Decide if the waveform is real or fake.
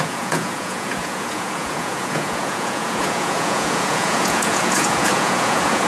fake